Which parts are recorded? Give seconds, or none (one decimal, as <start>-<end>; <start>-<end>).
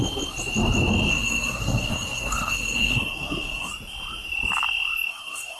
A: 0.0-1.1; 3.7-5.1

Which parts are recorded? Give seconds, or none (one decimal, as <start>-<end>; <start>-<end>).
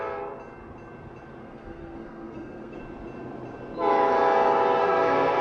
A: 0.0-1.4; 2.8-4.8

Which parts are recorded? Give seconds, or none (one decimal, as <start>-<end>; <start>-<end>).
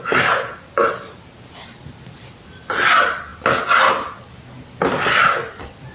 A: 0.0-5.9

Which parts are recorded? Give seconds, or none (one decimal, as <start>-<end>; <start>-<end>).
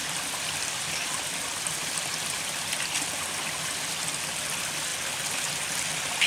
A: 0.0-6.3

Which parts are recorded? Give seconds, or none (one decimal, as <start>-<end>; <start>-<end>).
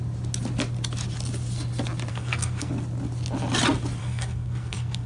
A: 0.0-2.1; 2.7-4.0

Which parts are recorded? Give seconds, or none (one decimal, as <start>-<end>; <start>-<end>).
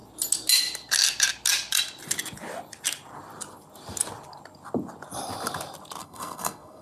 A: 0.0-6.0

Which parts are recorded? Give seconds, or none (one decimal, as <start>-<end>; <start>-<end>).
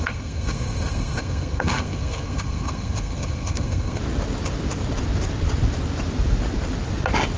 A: 4.0-7.4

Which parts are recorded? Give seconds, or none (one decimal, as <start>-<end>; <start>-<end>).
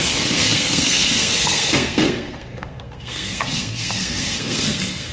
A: none